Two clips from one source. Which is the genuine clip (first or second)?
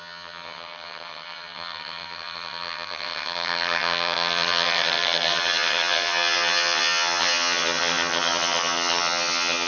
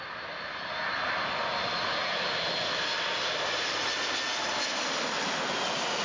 second